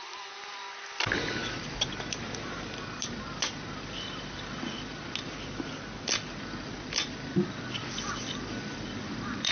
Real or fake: real